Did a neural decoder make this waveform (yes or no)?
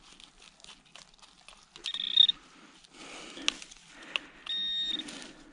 no